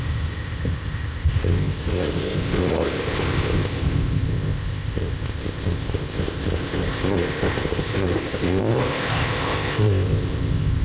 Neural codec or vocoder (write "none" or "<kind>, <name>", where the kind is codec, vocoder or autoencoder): codec, ZipCodec